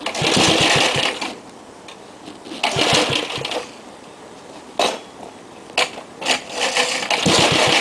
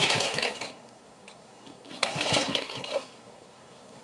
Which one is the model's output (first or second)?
second